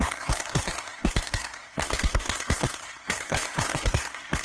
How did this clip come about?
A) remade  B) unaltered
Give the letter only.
A